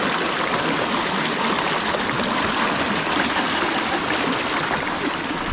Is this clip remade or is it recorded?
recorded